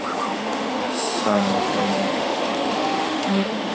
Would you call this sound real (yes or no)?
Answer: no